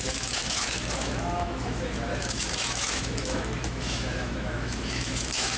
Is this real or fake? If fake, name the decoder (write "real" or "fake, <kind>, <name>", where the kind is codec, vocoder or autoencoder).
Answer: fake, autoencoder, DAC-VAE